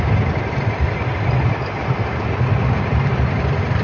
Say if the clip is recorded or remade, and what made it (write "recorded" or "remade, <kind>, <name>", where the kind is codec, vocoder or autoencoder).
recorded